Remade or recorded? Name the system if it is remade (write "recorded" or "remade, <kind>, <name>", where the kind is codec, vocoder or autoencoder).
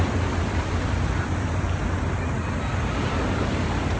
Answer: recorded